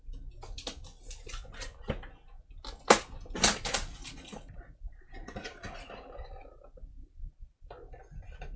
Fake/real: real